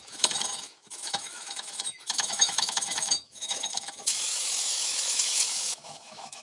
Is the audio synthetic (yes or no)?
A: yes